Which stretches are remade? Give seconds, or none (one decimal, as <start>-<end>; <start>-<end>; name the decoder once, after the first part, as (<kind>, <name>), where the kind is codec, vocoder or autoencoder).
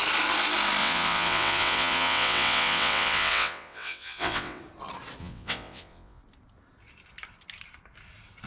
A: 0.8-4.6 (vocoder, WaveNeXt); 5.2-6.2